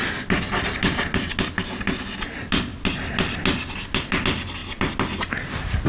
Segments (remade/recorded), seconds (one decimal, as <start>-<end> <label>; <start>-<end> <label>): 0.0-5.9 recorded